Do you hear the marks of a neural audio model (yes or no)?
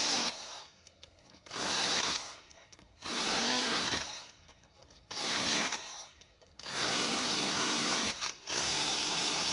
yes